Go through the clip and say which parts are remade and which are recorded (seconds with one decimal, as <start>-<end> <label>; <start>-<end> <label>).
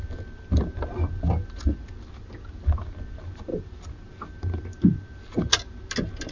0.0-6.3 recorded